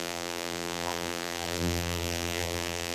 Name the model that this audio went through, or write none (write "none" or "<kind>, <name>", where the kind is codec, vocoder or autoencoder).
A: vocoder, BigVGAN v2